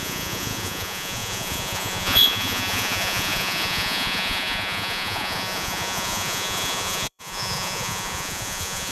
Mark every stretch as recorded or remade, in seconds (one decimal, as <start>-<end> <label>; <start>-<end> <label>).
0.0-8.9 remade